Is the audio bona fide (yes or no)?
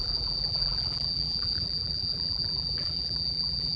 no